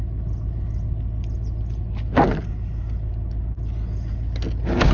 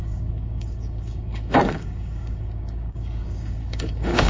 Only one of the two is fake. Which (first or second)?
second